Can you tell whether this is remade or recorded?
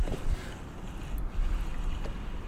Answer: remade